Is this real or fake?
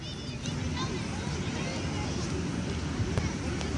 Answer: real